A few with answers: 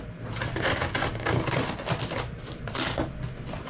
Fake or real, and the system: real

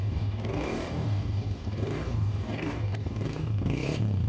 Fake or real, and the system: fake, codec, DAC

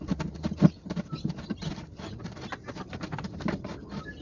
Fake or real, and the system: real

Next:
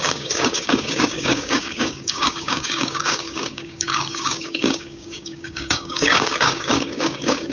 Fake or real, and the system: fake, codec, DAC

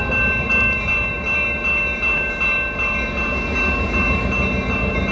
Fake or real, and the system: real